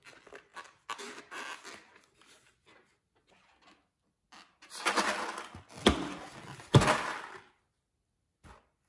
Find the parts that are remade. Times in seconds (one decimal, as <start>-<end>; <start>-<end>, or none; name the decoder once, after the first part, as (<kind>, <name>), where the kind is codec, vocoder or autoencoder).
0.5-1.2 (vocoder, BigVGAN v2)